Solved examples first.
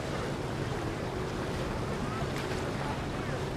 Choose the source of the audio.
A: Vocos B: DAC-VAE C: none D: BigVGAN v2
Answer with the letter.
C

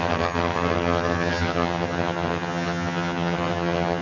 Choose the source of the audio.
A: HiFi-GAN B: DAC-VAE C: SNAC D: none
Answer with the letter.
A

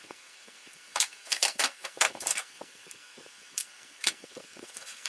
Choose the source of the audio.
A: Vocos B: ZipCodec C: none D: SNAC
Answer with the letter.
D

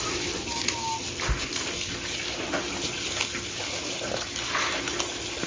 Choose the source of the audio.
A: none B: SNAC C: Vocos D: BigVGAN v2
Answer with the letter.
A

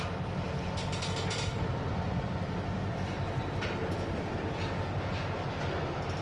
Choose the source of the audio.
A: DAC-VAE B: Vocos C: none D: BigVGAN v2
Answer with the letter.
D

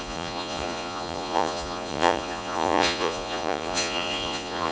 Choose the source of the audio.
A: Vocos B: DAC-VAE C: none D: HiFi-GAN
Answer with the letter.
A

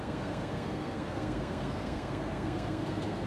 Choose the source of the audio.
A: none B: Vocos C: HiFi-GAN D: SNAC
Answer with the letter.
D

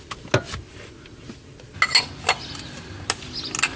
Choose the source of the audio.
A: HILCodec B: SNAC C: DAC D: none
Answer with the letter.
D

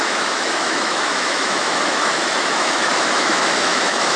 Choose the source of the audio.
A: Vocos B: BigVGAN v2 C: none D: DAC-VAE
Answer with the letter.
D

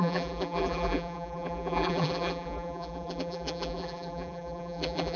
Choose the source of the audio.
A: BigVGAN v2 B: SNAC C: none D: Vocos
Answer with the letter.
A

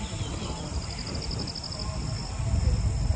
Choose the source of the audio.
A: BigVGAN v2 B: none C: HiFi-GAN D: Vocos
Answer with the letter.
B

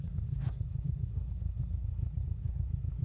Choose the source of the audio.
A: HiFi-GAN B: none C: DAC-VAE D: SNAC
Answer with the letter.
D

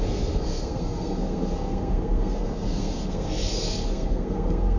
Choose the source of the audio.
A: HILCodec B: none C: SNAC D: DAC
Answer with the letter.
C